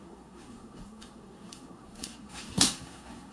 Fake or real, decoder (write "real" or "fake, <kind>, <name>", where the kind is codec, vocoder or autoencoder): fake, codec, SNAC